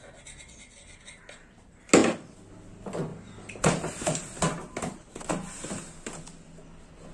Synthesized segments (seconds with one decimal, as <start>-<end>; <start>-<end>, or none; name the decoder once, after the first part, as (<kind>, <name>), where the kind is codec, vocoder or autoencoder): 3.1-4.2 (vocoder, BigVGAN v2)